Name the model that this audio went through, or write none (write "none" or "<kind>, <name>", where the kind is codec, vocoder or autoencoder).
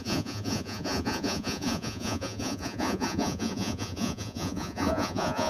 vocoder, Vocos